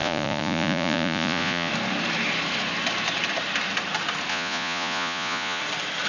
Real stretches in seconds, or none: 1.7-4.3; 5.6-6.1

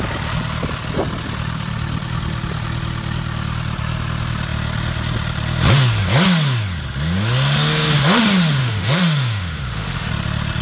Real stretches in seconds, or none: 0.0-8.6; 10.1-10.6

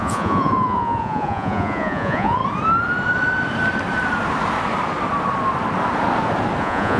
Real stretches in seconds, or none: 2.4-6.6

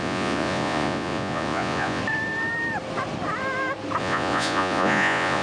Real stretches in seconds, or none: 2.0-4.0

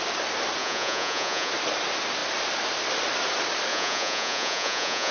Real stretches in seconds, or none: 0.0-0.6; 1.5-3.7